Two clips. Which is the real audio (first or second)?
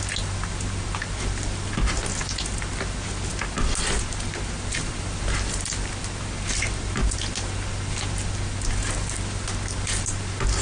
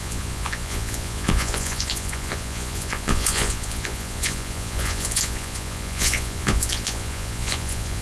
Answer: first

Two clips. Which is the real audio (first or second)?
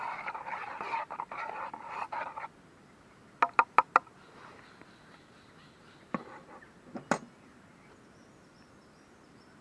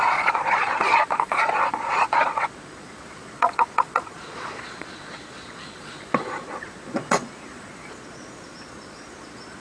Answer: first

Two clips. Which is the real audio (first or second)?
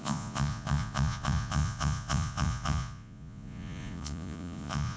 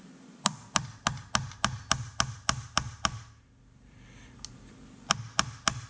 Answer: second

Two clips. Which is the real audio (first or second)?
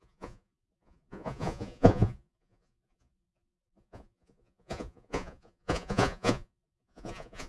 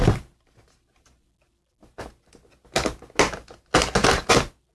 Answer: second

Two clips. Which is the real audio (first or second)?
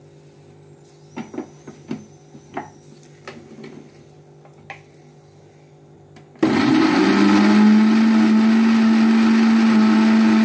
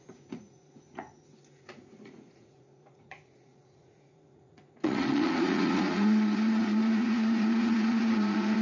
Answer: first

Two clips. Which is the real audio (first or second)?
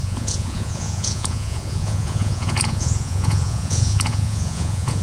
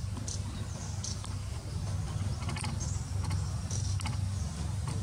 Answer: second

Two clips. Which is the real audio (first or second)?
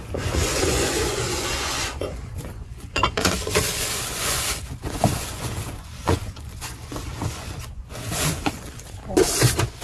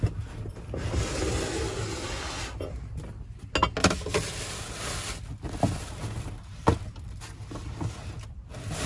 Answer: second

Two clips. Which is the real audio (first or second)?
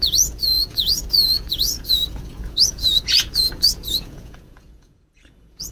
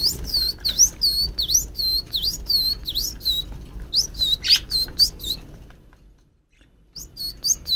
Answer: second